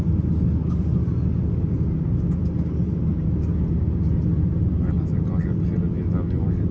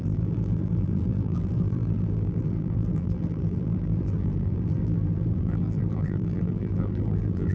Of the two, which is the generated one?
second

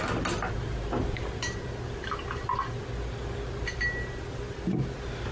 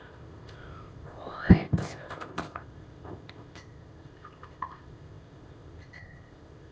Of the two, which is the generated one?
second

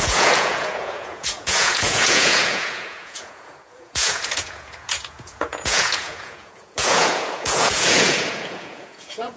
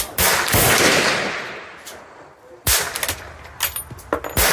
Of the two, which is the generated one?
first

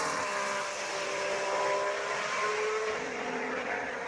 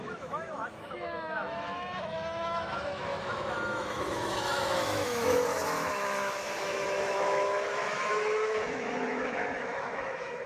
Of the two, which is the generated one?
second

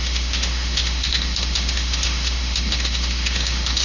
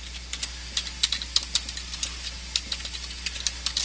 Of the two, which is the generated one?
first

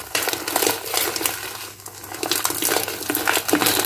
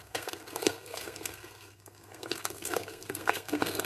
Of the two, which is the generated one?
second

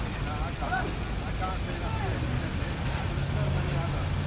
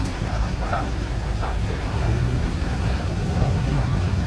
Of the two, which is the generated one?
second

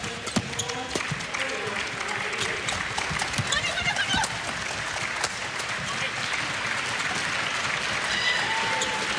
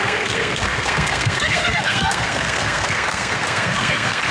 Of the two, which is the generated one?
second